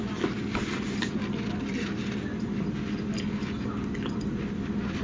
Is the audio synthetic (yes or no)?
no